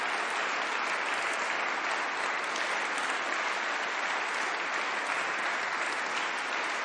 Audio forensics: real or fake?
real